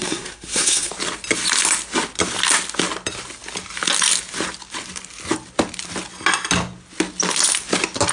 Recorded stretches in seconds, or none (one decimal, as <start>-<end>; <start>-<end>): 0.9-8.1